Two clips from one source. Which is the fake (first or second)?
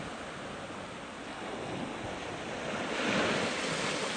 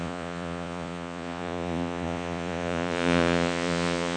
second